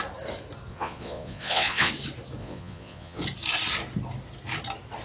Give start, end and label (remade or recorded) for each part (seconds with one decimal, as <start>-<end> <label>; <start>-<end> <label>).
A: 0.0-0.7 recorded; 0.7-1.9 remade; 1.9-2.4 recorded; 2.4-3.2 remade; 3.2-5.0 recorded